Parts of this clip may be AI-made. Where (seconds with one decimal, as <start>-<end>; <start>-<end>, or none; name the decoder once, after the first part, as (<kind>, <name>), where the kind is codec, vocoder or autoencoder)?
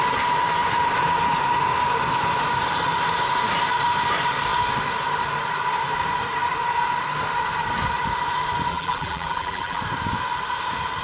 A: 8.7-9.8 (vocoder, BigVGAN v2)